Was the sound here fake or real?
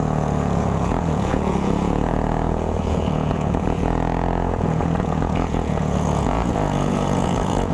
fake